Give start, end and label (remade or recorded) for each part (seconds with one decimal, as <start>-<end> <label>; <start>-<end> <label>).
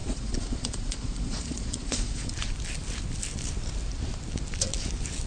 0.0-2.3 remade; 2.3-5.3 recorded